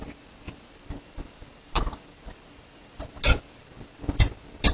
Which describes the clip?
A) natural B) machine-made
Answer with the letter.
A